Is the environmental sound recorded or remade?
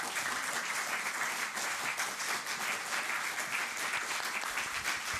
recorded